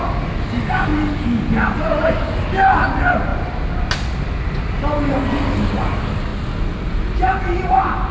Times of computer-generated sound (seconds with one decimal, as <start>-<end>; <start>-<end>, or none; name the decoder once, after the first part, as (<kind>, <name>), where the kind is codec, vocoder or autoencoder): none